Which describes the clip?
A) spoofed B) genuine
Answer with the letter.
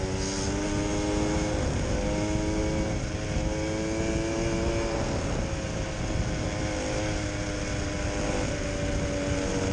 B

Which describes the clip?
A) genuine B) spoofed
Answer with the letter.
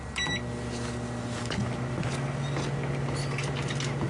A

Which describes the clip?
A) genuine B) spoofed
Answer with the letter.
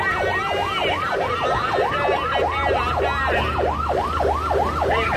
A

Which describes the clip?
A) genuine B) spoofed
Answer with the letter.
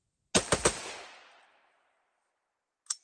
A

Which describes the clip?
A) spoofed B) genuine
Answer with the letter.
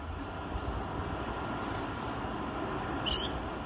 B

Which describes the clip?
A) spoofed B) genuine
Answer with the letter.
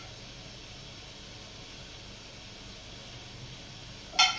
B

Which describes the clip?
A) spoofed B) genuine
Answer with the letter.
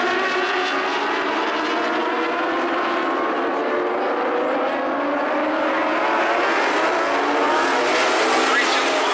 B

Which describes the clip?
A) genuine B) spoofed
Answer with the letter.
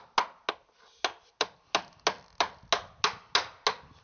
A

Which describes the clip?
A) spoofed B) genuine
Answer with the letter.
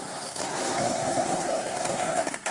A